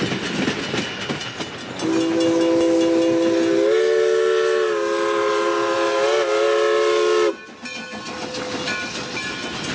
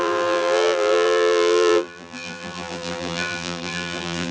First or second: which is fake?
second